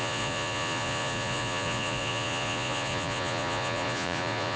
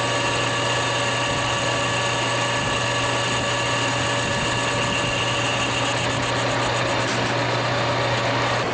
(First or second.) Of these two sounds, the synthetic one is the first